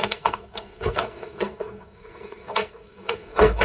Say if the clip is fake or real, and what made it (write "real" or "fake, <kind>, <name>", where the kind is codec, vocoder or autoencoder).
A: fake, codec, SNAC